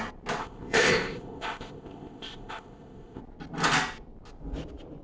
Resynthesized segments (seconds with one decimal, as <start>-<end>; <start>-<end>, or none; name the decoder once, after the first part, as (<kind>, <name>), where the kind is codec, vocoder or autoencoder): 0.4-3.2 (codec, ZipCodec)